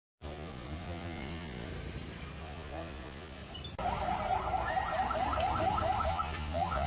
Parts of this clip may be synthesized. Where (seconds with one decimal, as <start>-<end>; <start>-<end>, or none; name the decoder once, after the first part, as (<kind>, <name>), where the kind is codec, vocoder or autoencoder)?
0.0-1.7 (vocoder, Vocos); 2.4-3.4; 6.1-6.9